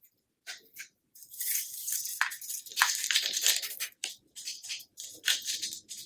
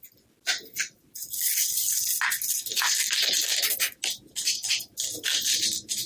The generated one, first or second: first